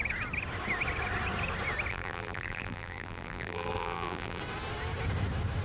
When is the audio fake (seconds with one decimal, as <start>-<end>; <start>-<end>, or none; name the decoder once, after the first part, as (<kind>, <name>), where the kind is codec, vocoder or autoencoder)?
1.9-4.4 (vocoder, BigVGAN v2)